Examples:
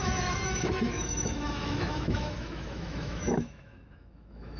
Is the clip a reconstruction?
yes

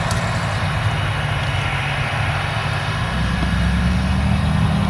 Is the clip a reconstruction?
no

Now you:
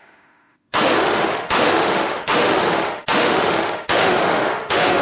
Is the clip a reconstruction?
yes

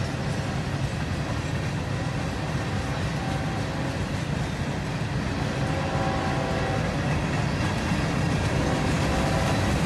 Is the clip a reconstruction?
no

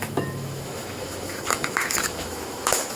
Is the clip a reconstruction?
yes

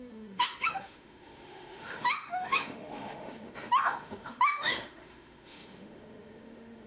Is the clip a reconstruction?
yes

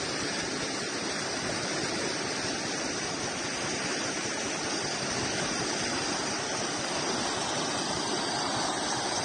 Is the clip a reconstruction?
no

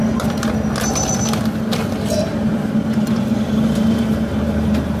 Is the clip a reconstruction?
no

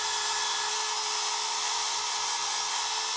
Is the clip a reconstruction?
no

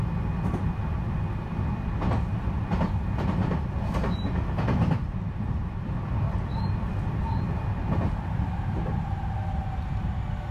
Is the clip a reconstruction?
no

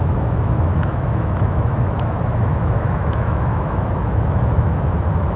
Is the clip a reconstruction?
yes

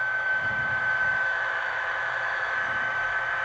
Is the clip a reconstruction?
yes